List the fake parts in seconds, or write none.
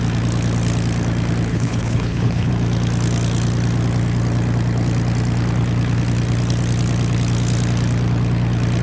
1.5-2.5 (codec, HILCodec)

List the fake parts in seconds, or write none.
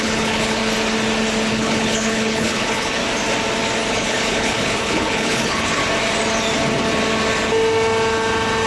0.0-0.6 (codec, HILCodec); 1.5-3.0; 3.9-5.8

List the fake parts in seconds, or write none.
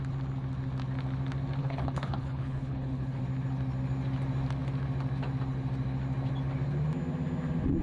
1.6-3.2 (codec, HILCodec)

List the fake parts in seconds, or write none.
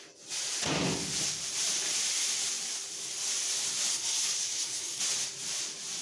3.9-5.0 (codec, HILCodec)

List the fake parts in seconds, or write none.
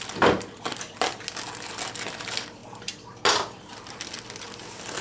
none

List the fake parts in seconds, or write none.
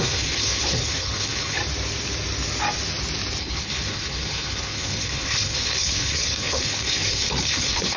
0.0-1.6 (codec, HILCodec); 3.4-8.0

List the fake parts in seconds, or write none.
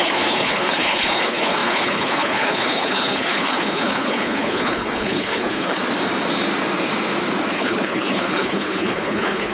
0.0-5.8 (codec, HILCodec); 7.5-9.5